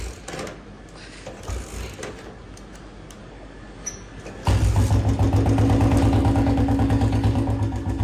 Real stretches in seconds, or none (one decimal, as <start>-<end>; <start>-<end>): 0.0-3.2; 4.2-6.2